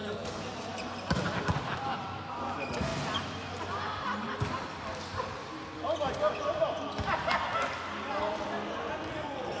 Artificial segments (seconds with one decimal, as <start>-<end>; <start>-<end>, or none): none